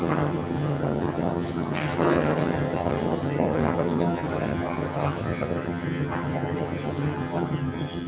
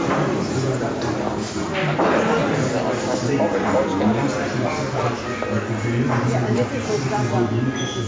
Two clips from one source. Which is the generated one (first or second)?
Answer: first